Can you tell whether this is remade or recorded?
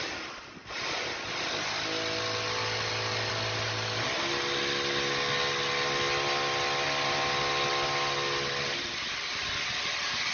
recorded